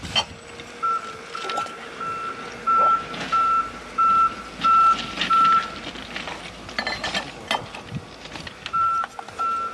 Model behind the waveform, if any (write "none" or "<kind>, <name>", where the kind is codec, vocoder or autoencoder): none